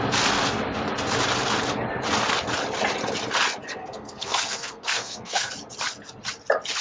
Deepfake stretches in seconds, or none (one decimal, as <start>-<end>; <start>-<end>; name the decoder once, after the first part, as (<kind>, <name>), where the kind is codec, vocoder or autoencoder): 3.8-5.5 (codec, SNAC)